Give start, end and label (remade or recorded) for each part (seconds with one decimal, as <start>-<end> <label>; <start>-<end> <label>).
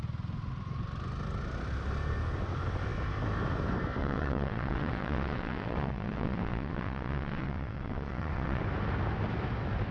0.0-4.0 recorded; 4.0-8.6 remade; 8.6-9.9 recorded